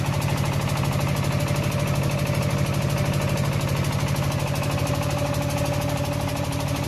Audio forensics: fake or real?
real